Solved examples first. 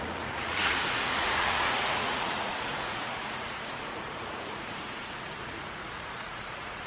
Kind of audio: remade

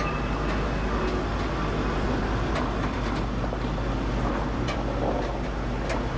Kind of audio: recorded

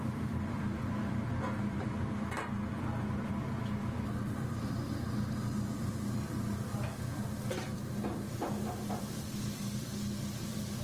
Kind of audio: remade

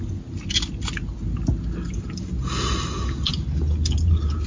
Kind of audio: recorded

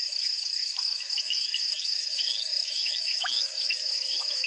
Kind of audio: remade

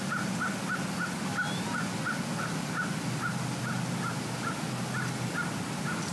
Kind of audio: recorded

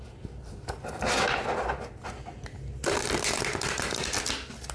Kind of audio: recorded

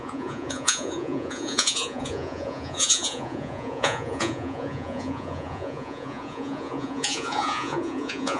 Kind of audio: remade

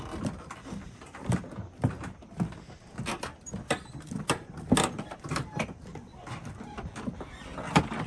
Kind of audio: recorded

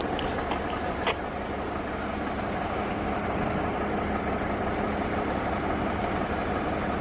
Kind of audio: recorded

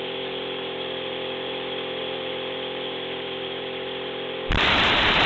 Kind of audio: remade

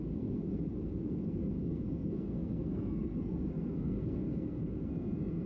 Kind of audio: remade